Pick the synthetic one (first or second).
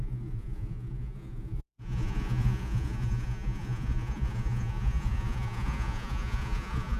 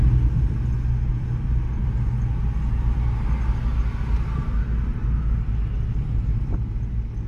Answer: first